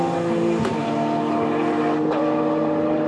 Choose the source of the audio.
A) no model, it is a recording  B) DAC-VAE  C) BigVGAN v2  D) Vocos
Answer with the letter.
A